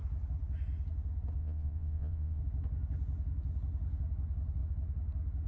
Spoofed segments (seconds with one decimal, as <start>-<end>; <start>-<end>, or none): 1.4-2.4